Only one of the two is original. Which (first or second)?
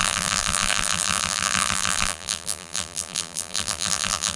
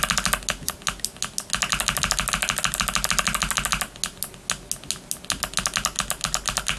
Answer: second